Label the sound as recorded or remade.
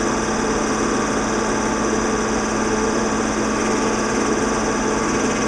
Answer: recorded